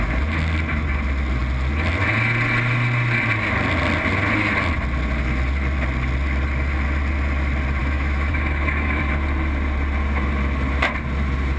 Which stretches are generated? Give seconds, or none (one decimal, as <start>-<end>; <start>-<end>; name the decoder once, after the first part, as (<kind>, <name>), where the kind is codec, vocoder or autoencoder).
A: 7.8-9.0 (autoencoder, DAC-VAE)

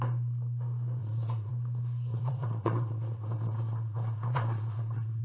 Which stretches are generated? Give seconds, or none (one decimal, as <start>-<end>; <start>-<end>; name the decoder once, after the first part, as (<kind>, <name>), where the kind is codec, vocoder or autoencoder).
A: 1.0-1.5 (vocoder, Vocos); 2.1-5.2